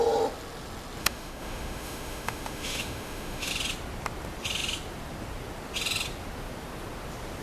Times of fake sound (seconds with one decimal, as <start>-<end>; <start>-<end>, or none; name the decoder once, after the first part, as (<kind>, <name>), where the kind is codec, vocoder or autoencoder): 1.0-3.5 (autoencoder, DAC-VAE)